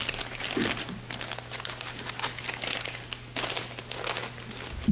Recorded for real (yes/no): yes